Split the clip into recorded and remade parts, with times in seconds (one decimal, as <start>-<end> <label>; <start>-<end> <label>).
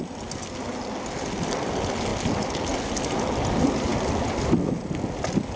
0.0-5.6 recorded